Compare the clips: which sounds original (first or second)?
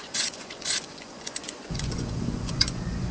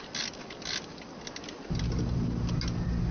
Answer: second